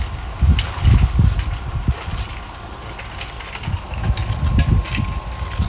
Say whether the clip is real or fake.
real